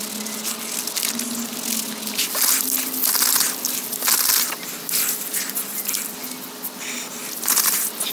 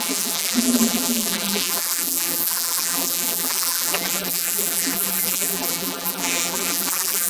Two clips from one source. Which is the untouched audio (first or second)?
first